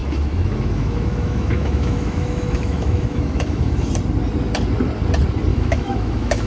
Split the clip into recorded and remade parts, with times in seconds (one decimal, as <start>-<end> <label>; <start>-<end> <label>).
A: 0.0-3.9 remade; 3.9-5.5 recorded; 5.5-6.5 remade